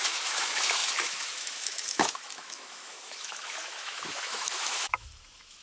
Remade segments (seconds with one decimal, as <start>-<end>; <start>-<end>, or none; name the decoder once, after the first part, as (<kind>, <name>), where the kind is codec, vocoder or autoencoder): 0.0-5.6 (autoencoder, DAC-VAE)